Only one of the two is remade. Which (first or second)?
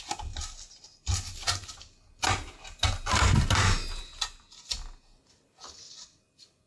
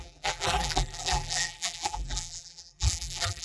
second